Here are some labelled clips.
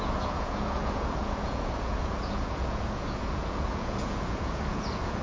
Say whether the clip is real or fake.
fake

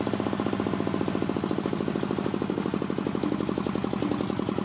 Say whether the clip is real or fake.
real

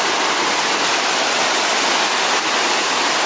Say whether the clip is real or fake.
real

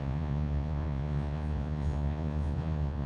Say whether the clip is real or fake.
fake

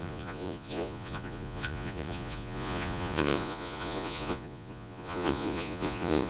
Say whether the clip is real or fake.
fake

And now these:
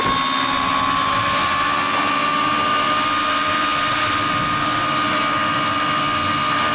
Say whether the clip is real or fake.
real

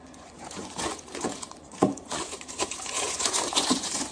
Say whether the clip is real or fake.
fake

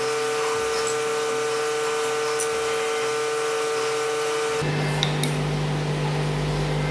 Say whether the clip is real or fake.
real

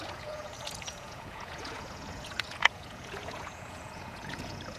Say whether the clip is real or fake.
fake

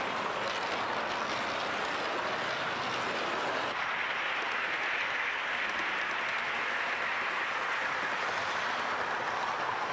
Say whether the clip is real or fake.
real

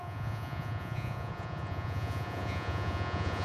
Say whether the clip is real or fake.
fake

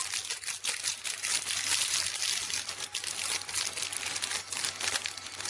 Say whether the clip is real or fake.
real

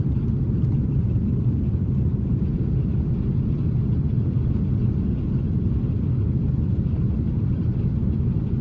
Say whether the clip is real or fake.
real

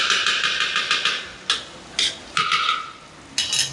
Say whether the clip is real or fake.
real